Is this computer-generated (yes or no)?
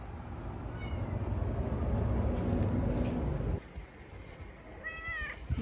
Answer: no